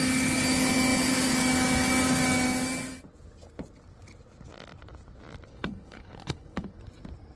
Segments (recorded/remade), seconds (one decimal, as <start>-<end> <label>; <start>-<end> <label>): 0.0-5.5 recorded; 5.5-6.8 remade; 6.8-7.4 recorded